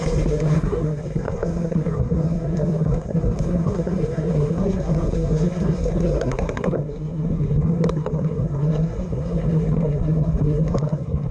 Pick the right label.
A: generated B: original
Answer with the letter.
A